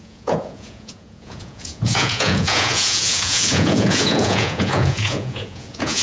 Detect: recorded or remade remade